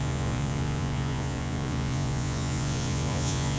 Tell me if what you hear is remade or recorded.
remade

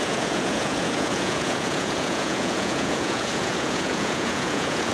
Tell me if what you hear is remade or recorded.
remade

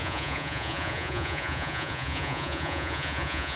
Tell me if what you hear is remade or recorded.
remade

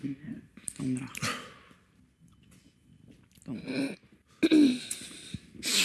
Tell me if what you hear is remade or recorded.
recorded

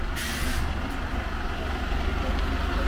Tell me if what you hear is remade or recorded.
recorded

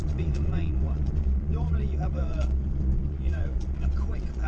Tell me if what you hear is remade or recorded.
remade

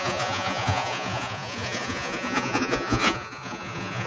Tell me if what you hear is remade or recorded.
remade